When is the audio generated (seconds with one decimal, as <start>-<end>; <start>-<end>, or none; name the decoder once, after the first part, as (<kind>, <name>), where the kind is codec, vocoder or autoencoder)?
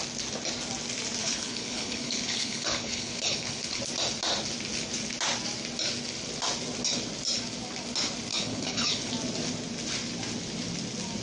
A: 1.2-3.8 (codec, HILCodec); 8.3-9.1